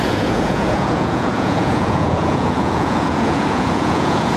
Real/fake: fake